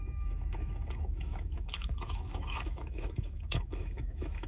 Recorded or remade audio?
remade